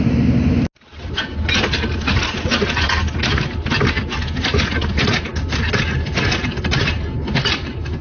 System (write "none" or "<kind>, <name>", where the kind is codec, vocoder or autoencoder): none